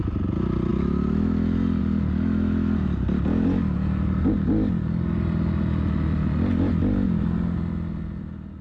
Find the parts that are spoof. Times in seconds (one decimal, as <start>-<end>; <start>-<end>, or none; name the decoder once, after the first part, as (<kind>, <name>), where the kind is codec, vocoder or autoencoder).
none